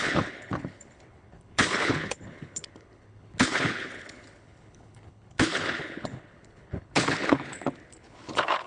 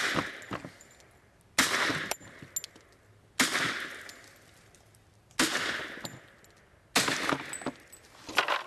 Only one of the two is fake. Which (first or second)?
first